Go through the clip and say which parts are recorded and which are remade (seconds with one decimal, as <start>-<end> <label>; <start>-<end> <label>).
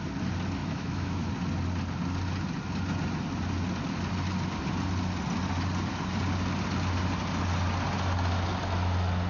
0.0-0.6 recorded; 0.6-1.3 remade; 1.3-9.3 recorded